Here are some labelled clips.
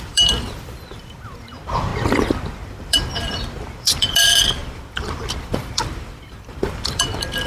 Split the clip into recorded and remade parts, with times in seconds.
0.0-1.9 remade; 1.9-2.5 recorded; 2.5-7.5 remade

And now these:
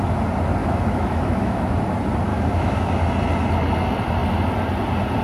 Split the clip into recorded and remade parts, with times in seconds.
0.0-0.6 recorded; 0.6-1.7 remade; 1.7-2.3 recorded; 2.3-2.9 remade; 2.9-5.2 recorded

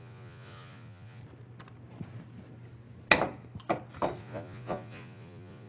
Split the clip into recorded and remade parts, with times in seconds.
0.0-1.2 remade; 1.2-4.2 recorded; 4.2-5.7 remade